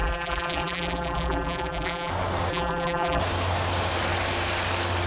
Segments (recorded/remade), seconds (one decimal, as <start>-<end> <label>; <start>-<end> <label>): 0.0-2.1 remade; 2.1-2.5 recorded; 2.5-3.2 remade; 3.2-5.1 recorded